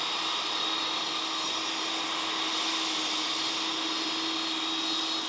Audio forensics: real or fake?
real